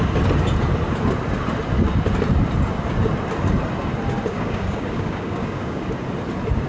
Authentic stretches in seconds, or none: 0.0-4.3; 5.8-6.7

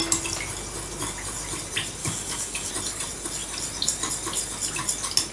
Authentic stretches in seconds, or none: 0.0-2.0; 2.7-5.3

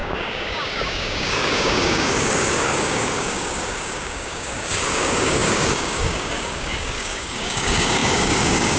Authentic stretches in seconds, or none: none